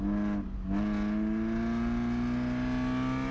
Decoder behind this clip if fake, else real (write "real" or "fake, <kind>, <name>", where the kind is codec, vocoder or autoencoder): real